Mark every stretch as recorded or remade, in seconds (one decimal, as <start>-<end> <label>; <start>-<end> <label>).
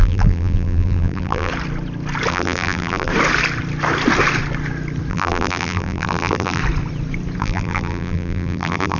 0.0-1.5 remade; 1.5-2.3 recorded; 2.3-3.1 remade; 3.1-5.1 recorded; 5.1-6.6 remade; 6.6-7.4 recorded; 7.4-9.0 remade